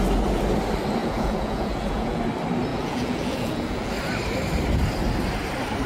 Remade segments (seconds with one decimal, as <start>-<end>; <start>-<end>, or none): 1.0-2.2; 2.7-3.9